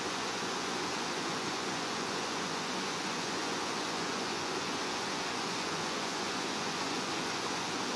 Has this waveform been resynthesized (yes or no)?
yes